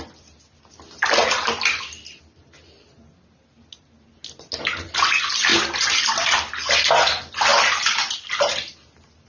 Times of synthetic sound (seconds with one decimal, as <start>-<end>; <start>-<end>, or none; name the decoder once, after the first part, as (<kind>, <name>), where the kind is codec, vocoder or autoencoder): 1.2-2.4 (vocoder, BigVGAN v2)